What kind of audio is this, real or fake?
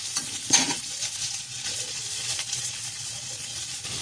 fake